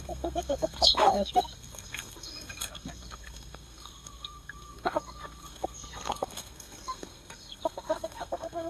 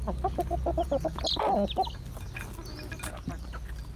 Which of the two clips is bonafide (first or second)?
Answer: second